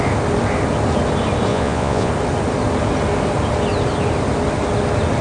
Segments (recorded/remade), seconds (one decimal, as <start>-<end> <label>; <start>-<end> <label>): 0.0-1.5 recorded; 1.5-2.1 remade; 2.1-5.2 recorded